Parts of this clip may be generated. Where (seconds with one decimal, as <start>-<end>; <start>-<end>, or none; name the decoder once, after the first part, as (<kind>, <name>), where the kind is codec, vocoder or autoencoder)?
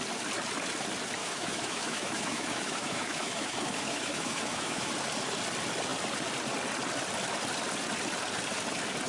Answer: 1.2-4.9 (autoencoder, DAC-VAE)